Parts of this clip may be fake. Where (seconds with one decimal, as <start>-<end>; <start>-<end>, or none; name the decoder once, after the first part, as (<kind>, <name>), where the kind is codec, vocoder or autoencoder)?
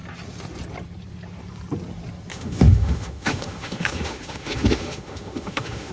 2.3-5.9 (autoencoder, DAC-VAE)